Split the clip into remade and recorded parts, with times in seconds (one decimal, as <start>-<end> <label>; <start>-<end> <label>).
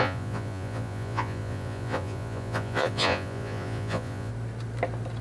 0.0-4.3 remade; 4.3-5.2 recorded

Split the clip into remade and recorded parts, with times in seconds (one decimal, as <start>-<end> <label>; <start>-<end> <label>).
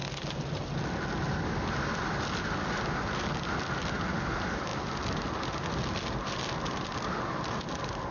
0.0-8.1 recorded